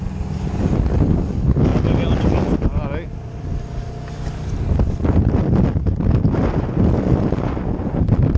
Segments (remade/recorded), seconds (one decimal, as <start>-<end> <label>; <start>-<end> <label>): 0.0-8.4 recorded